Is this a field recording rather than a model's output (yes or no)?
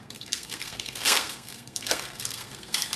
no